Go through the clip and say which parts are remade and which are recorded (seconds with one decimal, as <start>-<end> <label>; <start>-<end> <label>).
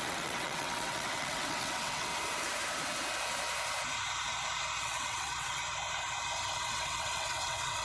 0.0-2.1 remade; 2.1-4.8 recorded; 4.8-5.6 remade; 5.6-6.6 recorded; 6.6-7.8 remade